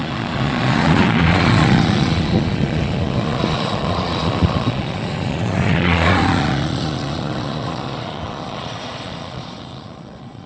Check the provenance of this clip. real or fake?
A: fake